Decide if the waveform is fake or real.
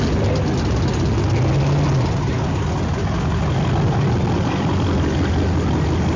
real